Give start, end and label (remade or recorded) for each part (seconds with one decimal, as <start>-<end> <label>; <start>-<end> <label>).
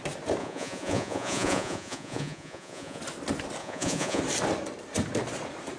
0.0-0.4 recorded; 0.4-3.0 remade; 3.0-3.6 recorded; 3.6-4.2 remade; 4.2-5.8 recorded